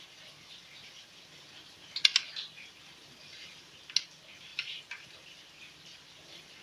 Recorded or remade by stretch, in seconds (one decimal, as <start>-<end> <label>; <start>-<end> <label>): 0.0-4.5 recorded; 4.5-5.1 remade; 5.1-6.6 recorded